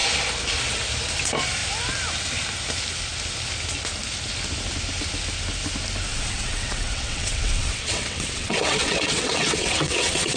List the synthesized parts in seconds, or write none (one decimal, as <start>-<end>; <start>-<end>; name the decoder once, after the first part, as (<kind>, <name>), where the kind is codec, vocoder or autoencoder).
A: 6.1-10.4 (vocoder, WaveNeXt)